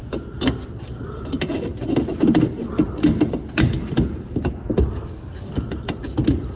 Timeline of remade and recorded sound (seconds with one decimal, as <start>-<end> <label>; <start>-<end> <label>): 0.0-6.6 recorded